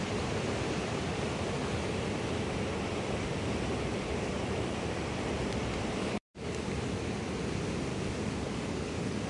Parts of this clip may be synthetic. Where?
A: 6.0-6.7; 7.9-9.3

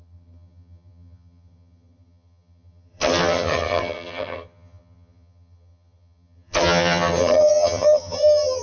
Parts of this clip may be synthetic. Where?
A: 0.0-8.6

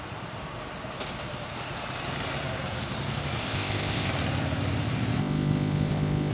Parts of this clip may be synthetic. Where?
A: 3.4-4.1; 5.2-6.3

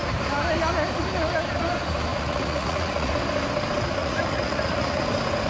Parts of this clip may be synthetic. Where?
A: 2.1-3.1; 4.0-5.0

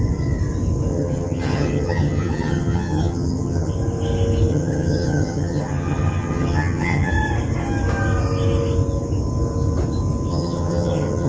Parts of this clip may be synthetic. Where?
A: 0.9-3.7; 4.5-7.1; 10.3-11.3

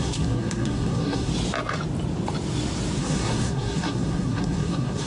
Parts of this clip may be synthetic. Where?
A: 0.0-1.3; 3.0-5.1

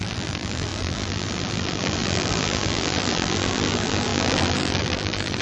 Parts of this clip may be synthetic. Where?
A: 0.0-5.4

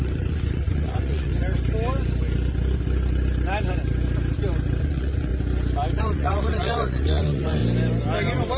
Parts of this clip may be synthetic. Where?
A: 0.0-1.3; 4.8-5.3; 6.0-7.6